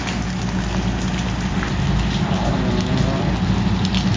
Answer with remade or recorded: recorded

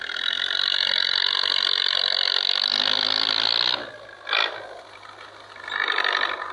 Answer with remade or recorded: recorded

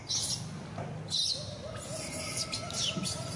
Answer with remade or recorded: recorded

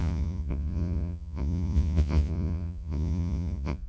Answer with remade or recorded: remade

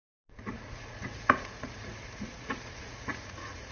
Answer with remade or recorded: remade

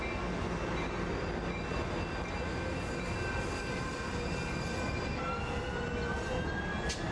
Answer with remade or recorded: recorded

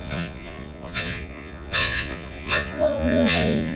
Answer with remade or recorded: remade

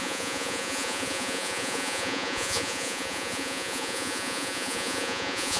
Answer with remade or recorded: remade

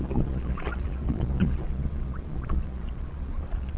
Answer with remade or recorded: remade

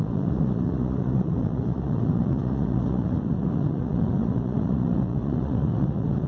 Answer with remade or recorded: remade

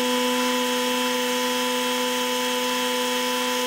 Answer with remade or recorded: recorded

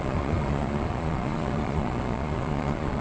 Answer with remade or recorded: remade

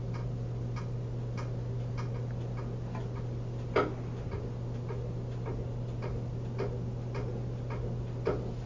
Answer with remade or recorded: recorded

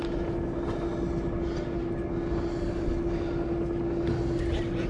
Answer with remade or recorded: recorded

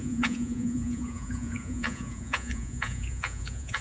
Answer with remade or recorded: remade